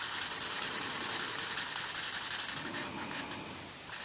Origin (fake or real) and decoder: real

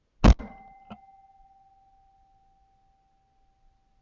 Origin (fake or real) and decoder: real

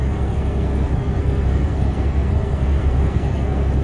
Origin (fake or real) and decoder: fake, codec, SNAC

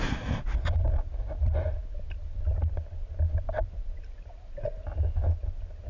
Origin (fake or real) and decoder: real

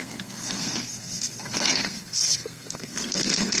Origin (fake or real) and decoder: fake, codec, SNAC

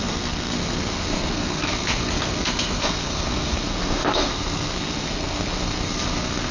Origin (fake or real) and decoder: fake, codec, SNAC